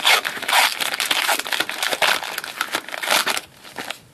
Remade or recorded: recorded